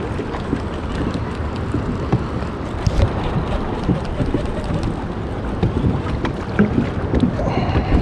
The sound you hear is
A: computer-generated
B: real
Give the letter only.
B